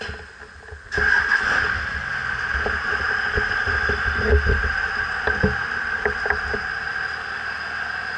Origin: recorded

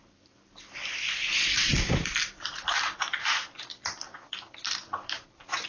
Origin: recorded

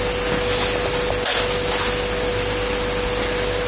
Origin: recorded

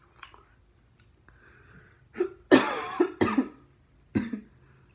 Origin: recorded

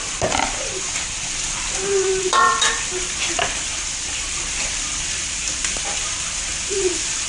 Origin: remade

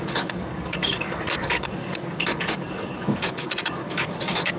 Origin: remade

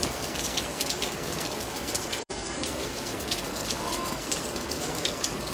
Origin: remade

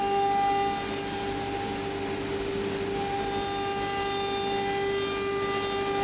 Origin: recorded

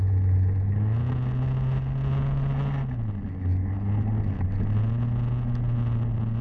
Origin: recorded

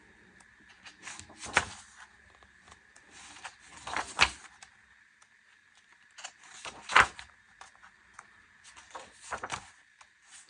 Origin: recorded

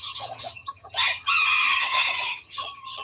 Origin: remade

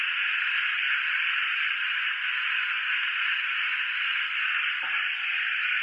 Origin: remade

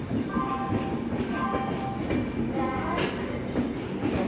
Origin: recorded